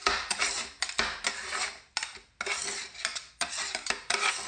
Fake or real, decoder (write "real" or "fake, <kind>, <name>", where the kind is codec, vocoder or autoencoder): real